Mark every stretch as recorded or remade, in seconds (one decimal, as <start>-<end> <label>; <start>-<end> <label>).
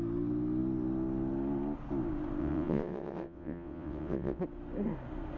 0.0-2.4 recorded; 2.4-4.4 remade; 4.4-5.4 recorded